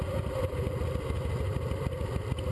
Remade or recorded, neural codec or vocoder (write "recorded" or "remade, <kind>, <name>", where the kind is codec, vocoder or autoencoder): recorded